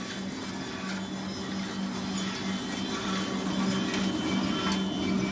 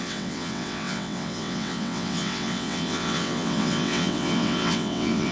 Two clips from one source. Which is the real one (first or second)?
first